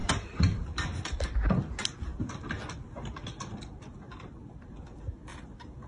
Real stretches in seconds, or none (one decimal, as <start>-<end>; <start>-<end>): 1.6-5.9